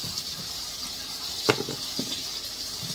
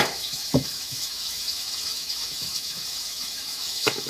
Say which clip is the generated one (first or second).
second